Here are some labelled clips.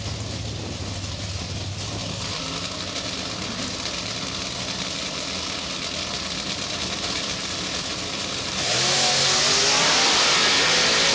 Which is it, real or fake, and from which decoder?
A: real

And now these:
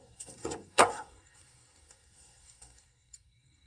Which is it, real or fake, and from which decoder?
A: fake, codec, SNAC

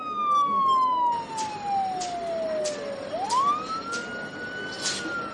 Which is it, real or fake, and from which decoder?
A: real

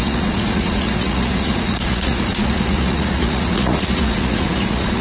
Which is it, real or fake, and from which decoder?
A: fake, vocoder, Vocos